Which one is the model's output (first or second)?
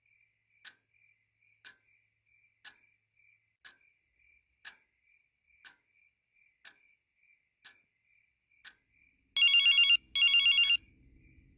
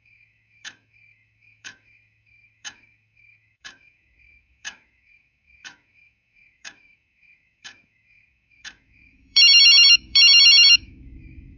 second